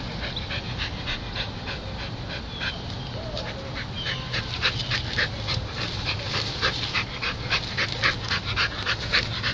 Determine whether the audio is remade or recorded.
recorded